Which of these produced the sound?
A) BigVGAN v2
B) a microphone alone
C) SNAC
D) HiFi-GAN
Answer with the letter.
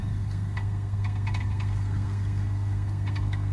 C